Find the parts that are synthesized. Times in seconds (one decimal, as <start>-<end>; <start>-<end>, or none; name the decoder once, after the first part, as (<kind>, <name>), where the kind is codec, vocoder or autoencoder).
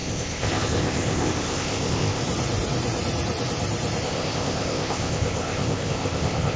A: 0.0-2.2 (codec, ZipCodec); 4.0-6.6